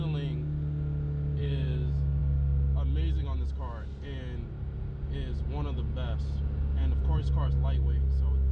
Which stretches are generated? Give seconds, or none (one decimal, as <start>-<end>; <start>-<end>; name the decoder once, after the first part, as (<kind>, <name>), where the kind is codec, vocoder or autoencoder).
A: 1.4-2.2 (autoencoder, DAC-VAE)